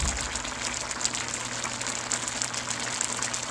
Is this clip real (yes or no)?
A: yes